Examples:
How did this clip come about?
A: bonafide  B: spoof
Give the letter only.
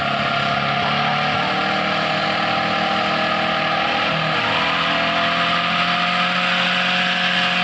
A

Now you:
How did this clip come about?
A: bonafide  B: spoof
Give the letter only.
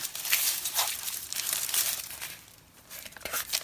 B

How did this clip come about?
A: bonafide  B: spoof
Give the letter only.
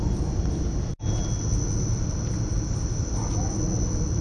A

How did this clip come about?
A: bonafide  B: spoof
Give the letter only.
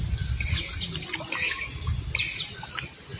A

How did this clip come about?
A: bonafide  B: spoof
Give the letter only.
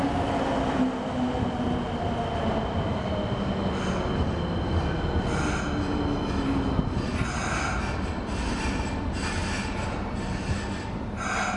A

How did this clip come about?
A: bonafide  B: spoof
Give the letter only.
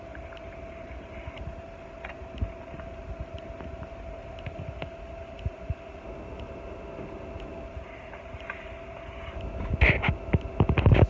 A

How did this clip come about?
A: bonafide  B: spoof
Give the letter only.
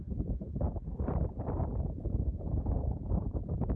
B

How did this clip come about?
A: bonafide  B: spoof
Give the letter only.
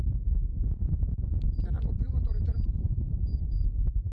B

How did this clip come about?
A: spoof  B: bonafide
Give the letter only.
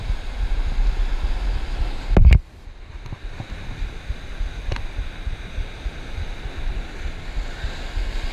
B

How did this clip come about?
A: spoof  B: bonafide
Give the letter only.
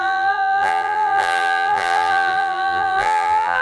A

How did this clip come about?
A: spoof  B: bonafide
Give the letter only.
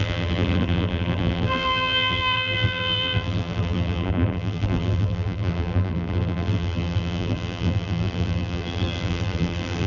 A